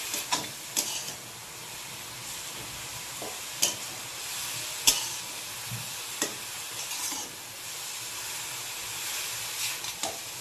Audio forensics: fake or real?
real